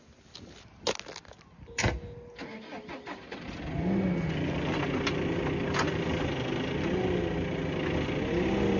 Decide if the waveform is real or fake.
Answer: real